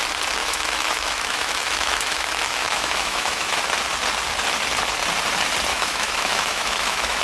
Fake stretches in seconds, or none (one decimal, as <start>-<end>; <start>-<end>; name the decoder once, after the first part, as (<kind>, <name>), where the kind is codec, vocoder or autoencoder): 0.4-3.6 (autoencoder, DAC-VAE); 5.7-7.2